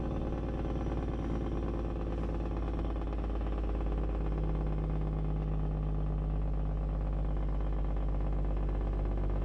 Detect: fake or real real